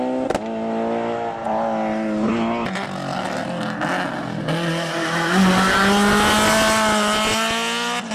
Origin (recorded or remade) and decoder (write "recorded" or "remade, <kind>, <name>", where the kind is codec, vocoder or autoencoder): recorded